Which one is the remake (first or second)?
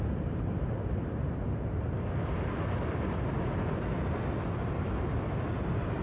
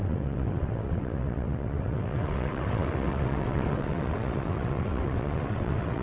second